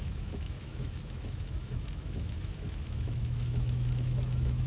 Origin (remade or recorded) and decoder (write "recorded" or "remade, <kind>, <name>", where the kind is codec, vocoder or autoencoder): remade, autoencoder, DAC-VAE